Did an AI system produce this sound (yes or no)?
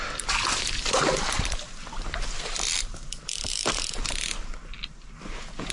no